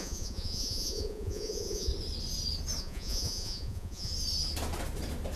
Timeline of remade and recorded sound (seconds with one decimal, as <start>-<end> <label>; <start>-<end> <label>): 0.0-1.9 remade; 1.9-2.8 recorded; 2.8-4.1 remade; 4.1-5.4 recorded